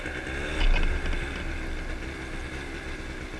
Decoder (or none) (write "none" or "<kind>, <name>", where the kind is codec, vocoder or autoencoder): none